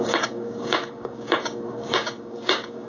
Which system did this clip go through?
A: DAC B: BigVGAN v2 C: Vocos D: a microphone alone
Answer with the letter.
A